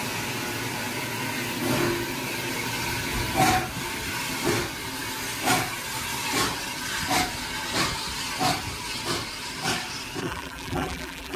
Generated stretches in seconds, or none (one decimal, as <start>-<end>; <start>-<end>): 10.2-11.4